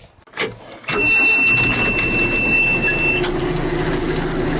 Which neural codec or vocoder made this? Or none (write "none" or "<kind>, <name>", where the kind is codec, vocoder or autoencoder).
none